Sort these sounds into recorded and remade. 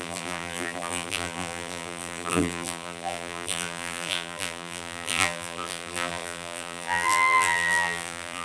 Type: remade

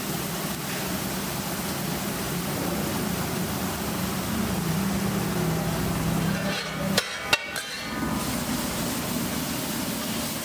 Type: recorded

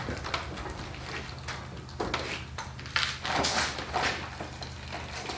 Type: recorded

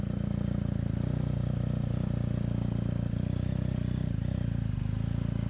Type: recorded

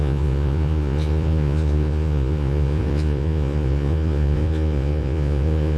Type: remade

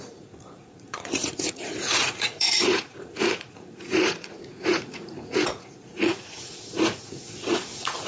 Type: remade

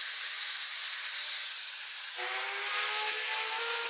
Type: recorded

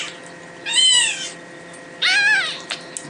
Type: recorded